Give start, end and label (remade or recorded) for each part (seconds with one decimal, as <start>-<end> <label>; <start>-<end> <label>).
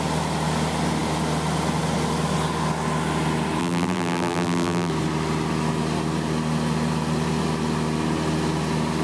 0.0-3.6 recorded; 3.6-4.9 remade; 4.9-9.0 recorded